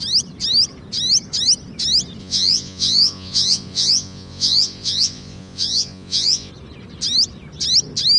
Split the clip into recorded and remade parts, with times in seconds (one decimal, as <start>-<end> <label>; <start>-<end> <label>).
0.0-2.2 recorded; 2.2-6.5 remade; 6.5-8.2 recorded